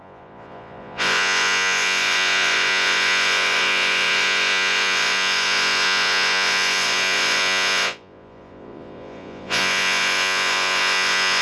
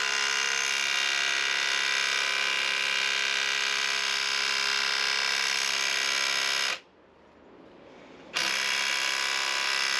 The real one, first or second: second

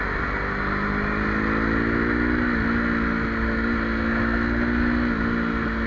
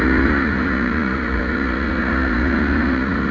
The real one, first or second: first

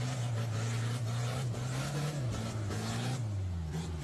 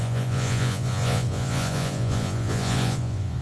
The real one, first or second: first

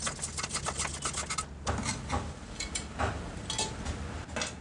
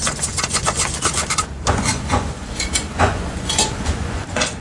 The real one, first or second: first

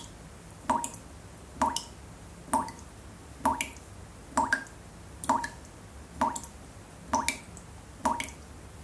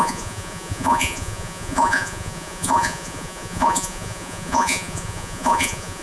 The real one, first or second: first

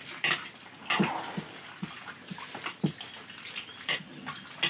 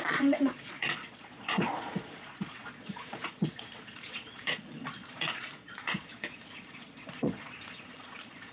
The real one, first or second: first